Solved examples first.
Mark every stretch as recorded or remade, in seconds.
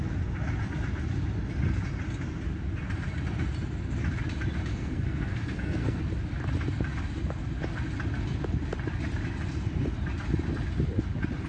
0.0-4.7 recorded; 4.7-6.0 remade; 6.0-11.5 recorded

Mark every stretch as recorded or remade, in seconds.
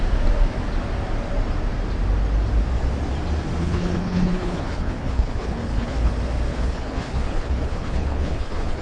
0.0-3.6 recorded; 3.6-6.1 remade; 6.1-6.5 recorded; 6.5-8.8 remade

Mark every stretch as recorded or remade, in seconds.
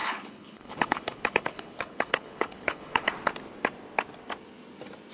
0.0-3.1 remade; 3.1-5.1 recorded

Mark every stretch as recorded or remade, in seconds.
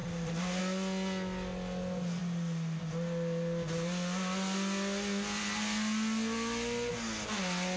0.0-0.6 remade; 0.6-7.8 recorded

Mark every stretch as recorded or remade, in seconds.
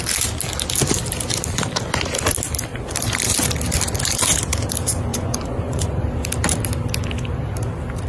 0.0-5.1 recorded; 5.1-5.9 remade; 5.9-8.1 recorded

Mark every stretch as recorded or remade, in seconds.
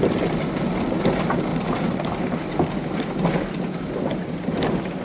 0.0-1.5 recorded; 1.5-4.3 remade; 4.3-5.0 recorded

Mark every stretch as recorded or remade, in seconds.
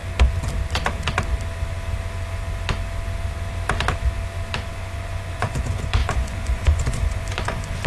0.0-4.7 recorded; 4.7-7.9 remade